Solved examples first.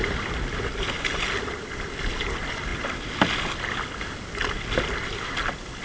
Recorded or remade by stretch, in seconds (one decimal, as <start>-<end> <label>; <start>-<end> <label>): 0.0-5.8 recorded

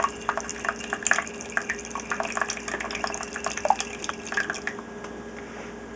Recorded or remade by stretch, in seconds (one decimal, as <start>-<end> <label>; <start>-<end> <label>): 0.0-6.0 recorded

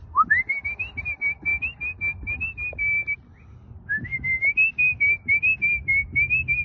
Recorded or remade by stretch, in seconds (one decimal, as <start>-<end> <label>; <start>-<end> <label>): 0.0-6.6 recorded

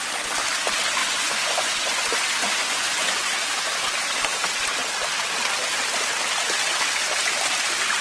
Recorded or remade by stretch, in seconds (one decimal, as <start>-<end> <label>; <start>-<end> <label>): 0.0-1.0 recorded; 1.0-2.0 remade; 2.0-2.4 recorded; 2.4-3.3 remade; 3.3-8.0 recorded

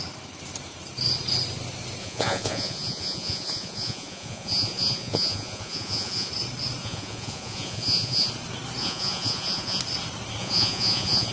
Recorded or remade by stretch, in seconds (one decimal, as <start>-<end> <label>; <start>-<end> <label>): 0.0-2.0 recorded; 2.0-6.3 remade; 6.3-6.8 recorded; 6.8-8.3 remade; 8.3-8.8 recorded; 8.8-9.8 remade; 9.8-10.4 recorded; 10.4-11.3 remade